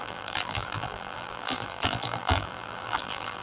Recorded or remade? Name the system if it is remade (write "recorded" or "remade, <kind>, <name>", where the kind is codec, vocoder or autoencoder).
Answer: remade, vocoder, BigVGAN v2